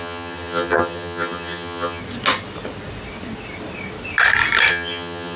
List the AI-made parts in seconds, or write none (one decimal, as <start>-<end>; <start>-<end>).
0.0-2.0; 4.7-5.4